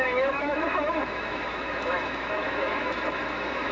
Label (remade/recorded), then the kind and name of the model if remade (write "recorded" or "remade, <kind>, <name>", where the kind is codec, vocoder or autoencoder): remade, autoencoder, DAC-VAE